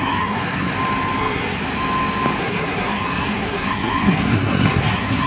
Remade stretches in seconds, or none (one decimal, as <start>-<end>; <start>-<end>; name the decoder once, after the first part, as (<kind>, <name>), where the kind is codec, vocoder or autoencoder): 0.0-0.7 (codec, SNAC); 1.2-1.6; 2.4-5.3